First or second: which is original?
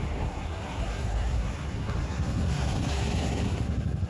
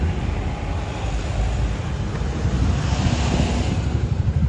second